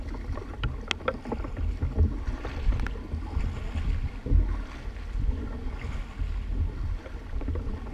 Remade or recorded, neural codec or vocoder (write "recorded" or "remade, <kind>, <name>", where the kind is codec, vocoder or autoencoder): recorded